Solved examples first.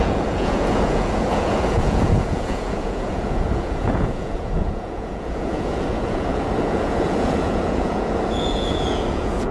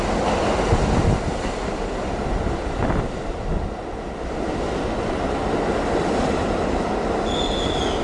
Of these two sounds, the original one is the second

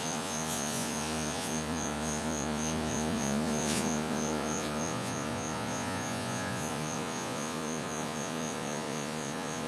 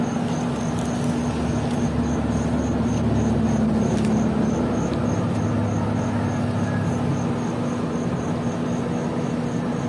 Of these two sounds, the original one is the second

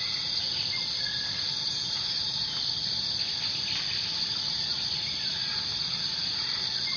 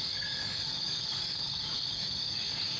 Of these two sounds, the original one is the first